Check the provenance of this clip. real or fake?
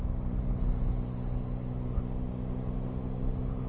real